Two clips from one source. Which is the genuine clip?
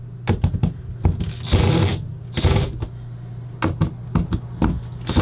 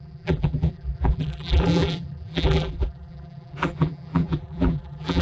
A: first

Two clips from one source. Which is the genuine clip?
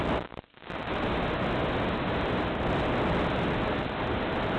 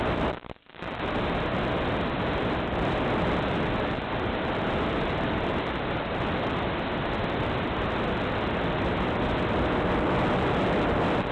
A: first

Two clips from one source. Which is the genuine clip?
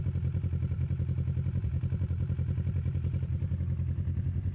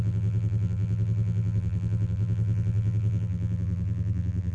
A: first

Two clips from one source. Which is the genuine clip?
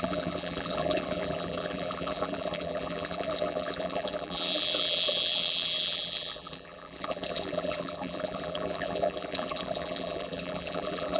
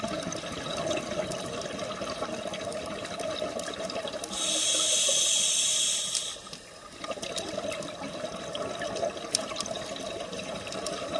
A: second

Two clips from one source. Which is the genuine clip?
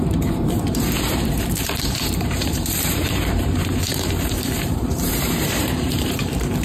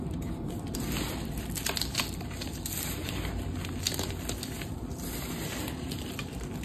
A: second